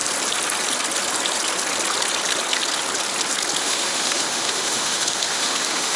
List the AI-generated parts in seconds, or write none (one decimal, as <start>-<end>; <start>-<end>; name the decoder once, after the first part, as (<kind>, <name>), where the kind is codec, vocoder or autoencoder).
3.6-6.0 (autoencoder, DAC-VAE)